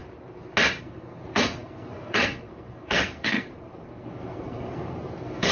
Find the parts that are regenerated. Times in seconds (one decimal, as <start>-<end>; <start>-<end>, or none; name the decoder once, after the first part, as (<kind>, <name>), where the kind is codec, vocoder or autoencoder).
0.8-5.5 (codec, SNAC)